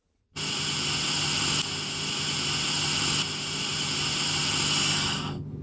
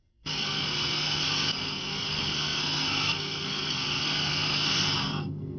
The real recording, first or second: first